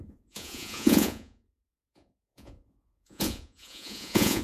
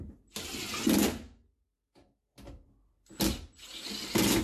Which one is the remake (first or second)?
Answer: first